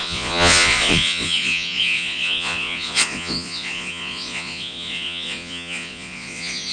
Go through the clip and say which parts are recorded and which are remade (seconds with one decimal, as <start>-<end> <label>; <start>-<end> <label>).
0.0-6.7 remade

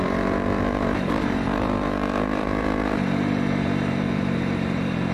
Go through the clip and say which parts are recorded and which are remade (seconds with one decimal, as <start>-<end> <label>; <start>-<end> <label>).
0.0-5.1 remade

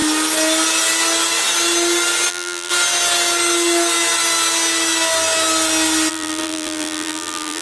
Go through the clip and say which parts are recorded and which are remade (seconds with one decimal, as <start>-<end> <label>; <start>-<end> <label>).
0.0-2.3 recorded; 2.3-2.7 remade; 2.7-6.1 recorded; 6.1-7.6 remade

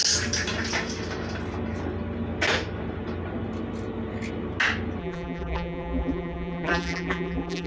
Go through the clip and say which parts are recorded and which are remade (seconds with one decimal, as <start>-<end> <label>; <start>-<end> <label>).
0.0-5.0 recorded; 5.0-7.7 remade

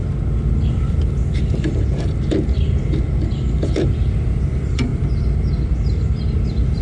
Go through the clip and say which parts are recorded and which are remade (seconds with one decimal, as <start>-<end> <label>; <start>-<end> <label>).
0.0-0.7 recorded; 0.7-4.9 remade; 4.9-6.8 recorded

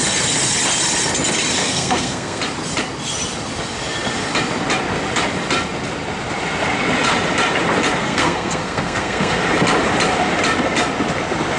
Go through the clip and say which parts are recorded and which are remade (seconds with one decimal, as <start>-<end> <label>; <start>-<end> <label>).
0.0-1.6 recorded; 1.6-2.4 remade; 2.4-8.0 recorded; 8.0-9.4 remade; 9.4-11.6 recorded